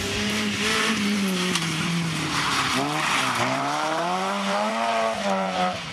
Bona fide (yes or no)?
no